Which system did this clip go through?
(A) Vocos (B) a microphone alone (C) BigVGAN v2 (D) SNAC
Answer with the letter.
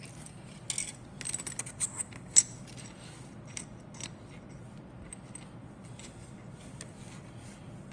B